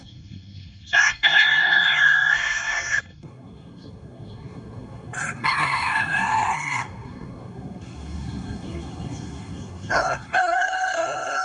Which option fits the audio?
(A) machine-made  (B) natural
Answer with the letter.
A